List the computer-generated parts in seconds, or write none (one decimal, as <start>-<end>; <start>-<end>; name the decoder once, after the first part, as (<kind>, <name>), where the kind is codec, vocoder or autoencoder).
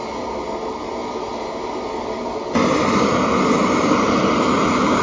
none